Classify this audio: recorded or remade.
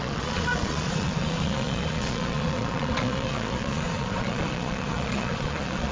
remade